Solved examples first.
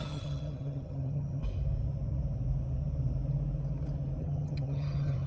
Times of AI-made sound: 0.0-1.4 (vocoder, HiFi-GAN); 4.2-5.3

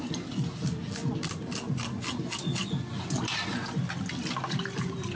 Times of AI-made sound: none

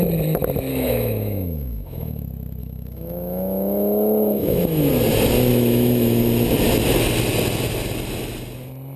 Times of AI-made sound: 0.7-2.2 (autoencoder, DAC-VAE); 2.6-4.9; 5.5-6.2

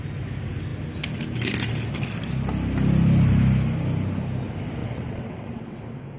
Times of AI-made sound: 4.8-5.8 (vocoder, WaveNeXt)

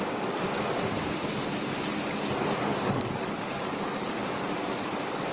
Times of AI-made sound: 2.7-4.2 (codec, DAC)